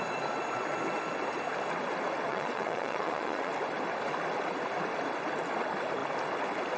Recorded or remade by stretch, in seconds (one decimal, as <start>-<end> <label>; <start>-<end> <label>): 0.0-2.3 recorded; 2.3-3.5 remade; 3.5-6.8 recorded